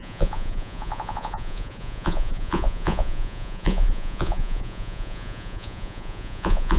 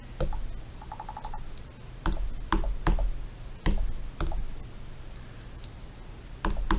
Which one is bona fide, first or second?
second